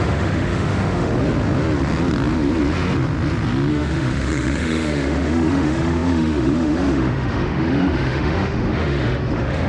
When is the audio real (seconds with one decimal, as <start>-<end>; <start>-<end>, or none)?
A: 1.1-3.7

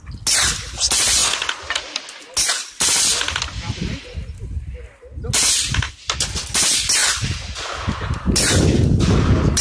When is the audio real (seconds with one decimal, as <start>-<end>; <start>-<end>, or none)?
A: 0.0-9.6

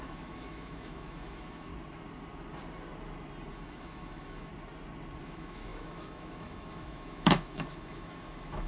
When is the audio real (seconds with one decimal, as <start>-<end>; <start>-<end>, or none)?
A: 1.7-3.5; 4.5-5.2

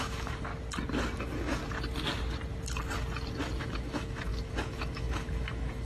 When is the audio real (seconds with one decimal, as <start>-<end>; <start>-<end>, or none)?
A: 0.5-1.2; 1.6-3.6